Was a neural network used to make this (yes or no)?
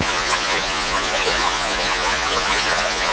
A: yes